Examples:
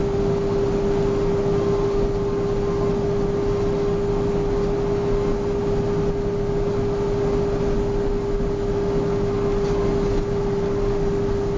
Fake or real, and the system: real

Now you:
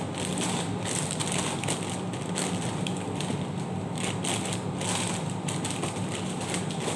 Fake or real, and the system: real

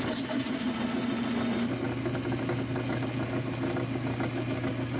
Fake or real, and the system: real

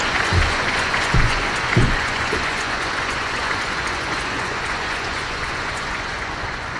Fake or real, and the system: fake, vocoder, Vocos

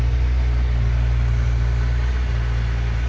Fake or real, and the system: real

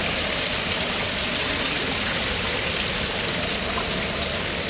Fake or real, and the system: real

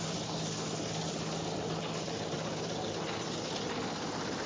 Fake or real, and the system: real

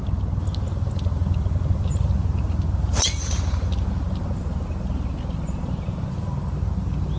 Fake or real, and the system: real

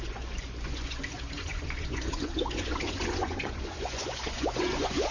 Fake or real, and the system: fake, vocoder, Vocos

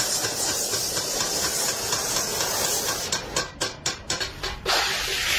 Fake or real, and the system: real